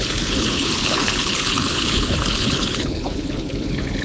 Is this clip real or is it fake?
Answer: fake